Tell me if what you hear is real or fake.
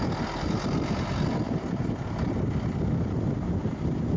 real